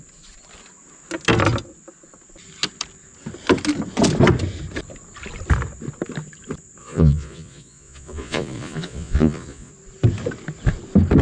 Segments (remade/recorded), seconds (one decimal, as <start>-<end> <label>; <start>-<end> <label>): 0.0-6.8 recorded; 6.8-9.7 remade; 9.7-11.2 recorded